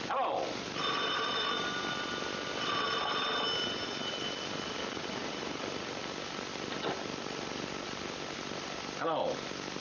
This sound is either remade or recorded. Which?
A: recorded